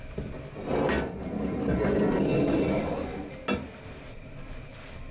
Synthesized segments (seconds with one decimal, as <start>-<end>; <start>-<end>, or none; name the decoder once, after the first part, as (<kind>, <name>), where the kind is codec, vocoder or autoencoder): none